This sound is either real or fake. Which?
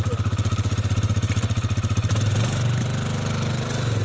real